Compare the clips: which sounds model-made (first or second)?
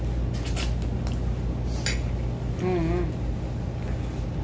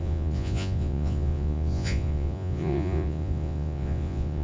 second